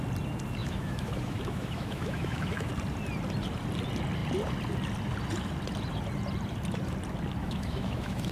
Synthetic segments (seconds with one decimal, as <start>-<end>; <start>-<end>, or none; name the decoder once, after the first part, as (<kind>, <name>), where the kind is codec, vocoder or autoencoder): 0.6-2.7 (autoencoder, DAC-VAE); 7.4-8.3